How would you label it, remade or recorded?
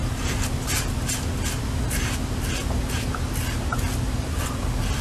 recorded